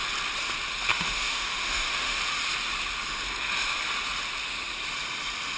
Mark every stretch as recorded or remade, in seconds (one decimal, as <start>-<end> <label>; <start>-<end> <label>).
0.0-0.9 recorded; 0.9-2.2 remade; 2.2-5.6 recorded